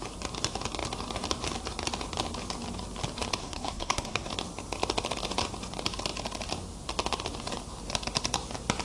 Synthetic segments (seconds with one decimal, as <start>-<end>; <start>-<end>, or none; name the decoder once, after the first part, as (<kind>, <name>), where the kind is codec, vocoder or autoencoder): 3.4-4.3 (codec, SNAC)